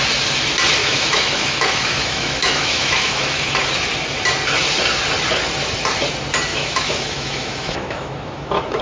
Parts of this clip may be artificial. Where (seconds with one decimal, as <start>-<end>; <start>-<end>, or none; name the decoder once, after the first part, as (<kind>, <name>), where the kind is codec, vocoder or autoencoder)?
0.8-3.4 (autoencoder, DAC-VAE); 6.5-8.8